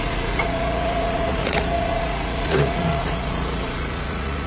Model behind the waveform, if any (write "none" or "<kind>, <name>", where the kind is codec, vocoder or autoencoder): vocoder, Vocos